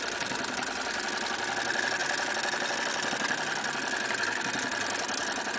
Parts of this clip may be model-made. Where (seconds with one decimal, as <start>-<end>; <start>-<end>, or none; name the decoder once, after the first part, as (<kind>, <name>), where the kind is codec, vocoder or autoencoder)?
none